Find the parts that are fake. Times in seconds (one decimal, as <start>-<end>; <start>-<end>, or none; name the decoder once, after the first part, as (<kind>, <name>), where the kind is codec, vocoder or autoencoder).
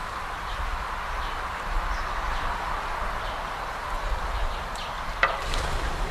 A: 0.0-6.1 (vocoder, BigVGAN v2)